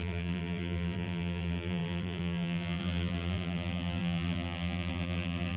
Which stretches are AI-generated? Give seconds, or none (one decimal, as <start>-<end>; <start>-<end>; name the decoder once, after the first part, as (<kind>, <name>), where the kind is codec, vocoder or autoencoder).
0.0-5.6 (vocoder, BigVGAN v2)